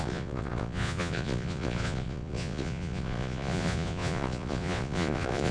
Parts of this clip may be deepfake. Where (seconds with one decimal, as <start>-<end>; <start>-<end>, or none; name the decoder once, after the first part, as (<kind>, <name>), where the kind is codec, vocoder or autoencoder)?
0.0-5.5 (vocoder, Vocos)